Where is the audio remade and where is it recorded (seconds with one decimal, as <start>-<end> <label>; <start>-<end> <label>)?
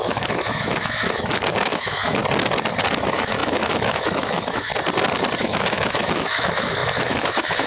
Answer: 0.0-2.2 remade; 2.2-3.0 recorded; 3.0-4.7 remade; 4.7-5.4 recorded; 5.4-7.7 remade